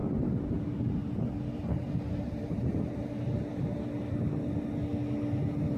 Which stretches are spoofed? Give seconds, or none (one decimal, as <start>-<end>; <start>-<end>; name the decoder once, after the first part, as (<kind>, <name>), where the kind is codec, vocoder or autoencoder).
3.5-4.1 (vocoder, BigVGAN v2)